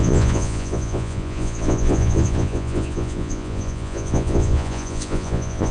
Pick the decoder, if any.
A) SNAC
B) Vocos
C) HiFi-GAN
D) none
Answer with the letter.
B